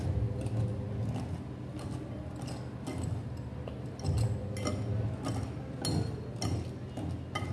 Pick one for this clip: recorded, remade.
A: recorded